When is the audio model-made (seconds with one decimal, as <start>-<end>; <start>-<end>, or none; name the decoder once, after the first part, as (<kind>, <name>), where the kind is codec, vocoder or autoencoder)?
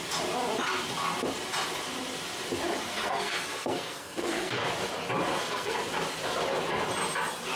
2.9-4.6 (codec, SNAC); 5.3-5.8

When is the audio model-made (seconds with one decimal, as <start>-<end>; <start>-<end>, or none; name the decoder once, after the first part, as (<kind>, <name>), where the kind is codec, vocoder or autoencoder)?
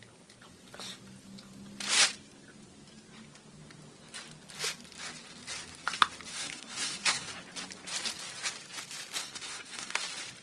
6.3-7.3 (codec, SNAC); 9.2-10.0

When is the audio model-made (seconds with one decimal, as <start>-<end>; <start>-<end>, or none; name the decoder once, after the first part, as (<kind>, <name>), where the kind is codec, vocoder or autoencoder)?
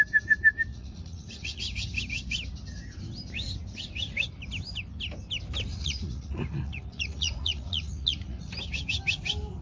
0.7-1.6 (vocoder, Vocos); 5.7-8.5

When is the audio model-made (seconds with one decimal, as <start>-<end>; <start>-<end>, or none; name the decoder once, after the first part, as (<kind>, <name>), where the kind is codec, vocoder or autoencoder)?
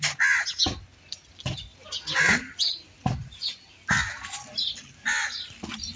none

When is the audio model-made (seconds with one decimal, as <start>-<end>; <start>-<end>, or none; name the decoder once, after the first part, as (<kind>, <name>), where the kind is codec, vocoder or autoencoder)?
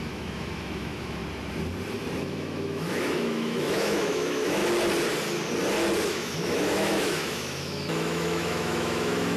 0.0-1.2 (autoencoder, DAC-VAE); 2.2-4.6; 6.1-9.4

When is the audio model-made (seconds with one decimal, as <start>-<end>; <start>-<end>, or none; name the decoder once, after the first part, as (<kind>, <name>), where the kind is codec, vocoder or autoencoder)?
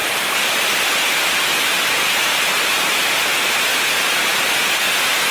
0.0-3.2 (vocoder, BigVGAN v2); 3.7-4.8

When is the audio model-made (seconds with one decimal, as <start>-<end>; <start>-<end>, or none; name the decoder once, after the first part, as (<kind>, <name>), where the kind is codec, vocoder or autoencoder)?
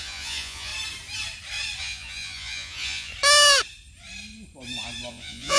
0.0-0.7 (vocoder, Vocos); 1.8-3.1; 5.1-5.6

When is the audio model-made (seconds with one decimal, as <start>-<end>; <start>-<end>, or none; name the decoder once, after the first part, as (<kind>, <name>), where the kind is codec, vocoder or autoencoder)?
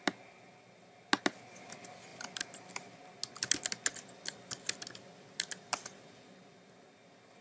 none